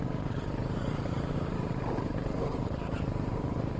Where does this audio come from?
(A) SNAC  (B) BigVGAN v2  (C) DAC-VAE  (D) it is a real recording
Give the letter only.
B